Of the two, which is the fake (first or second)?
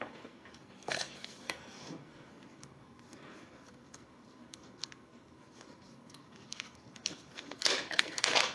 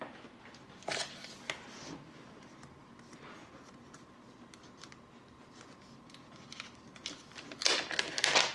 first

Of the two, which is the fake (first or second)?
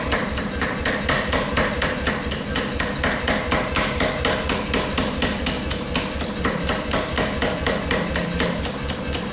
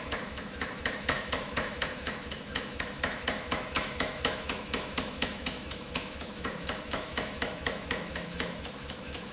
second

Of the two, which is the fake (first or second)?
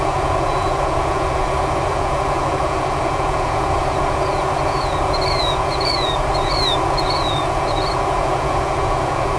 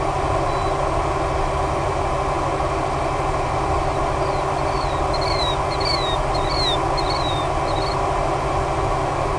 first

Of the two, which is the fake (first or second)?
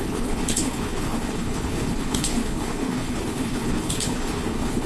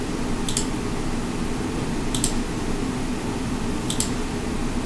first